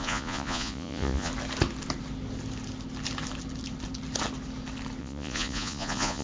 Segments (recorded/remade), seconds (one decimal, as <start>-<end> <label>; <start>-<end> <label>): 0.0-1.3 remade; 1.3-5.0 recorded; 5.0-6.2 remade